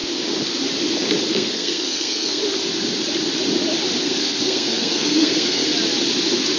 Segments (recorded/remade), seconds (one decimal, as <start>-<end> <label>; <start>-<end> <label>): 0.0-1.3 recorded; 1.3-2.4 remade; 2.4-4.0 recorded; 4.0-5.7 remade; 5.7-6.6 recorded